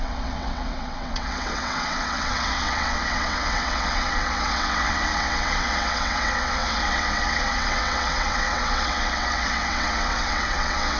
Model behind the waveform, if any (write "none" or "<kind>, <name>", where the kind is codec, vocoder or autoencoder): vocoder, WaveNeXt